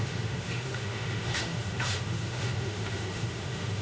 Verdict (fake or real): fake